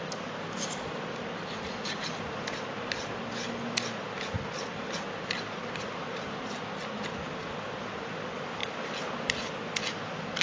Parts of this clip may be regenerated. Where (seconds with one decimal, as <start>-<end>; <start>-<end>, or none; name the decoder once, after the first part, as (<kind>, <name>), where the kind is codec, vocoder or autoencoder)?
none